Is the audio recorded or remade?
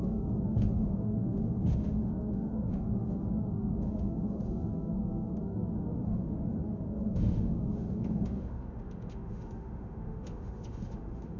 remade